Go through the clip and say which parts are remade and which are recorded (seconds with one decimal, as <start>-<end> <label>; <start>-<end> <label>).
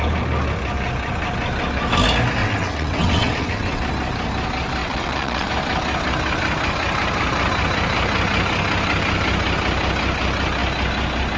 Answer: 0.0-2.4 recorded; 2.4-3.8 remade; 3.8-4.8 recorded; 4.8-5.5 remade; 5.5-11.4 recorded